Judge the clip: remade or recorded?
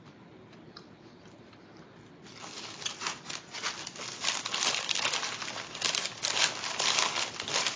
recorded